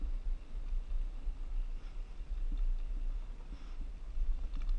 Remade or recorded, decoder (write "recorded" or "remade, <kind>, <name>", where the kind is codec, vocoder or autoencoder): recorded